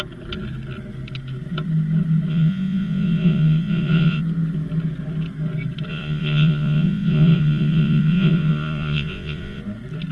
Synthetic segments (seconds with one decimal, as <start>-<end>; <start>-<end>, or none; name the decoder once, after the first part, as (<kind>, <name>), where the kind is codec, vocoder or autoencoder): 2.3-4.2 (vocoder, Vocos); 5.9-9.6